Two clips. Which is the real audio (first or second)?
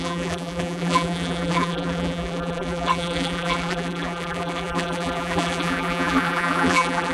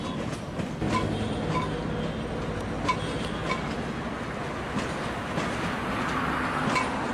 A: second